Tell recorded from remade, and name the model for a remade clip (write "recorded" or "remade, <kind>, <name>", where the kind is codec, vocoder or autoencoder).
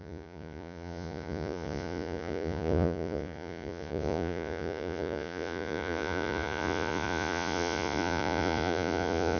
remade, vocoder, Vocos